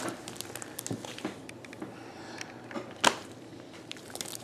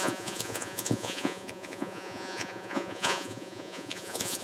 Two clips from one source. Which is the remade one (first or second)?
second